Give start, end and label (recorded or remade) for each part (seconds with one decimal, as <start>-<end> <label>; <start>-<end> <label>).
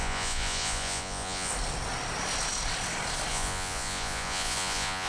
0.0-1.5 remade; 1.5-3.3 recorded; 3.3-5.1 remade